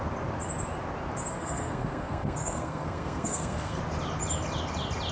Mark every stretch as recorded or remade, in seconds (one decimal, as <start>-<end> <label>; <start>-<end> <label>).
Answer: 0.0-1.4 recorded; 1.4-3.8 remade; 3.8-5.1 recorded